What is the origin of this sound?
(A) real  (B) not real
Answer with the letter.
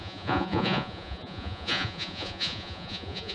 B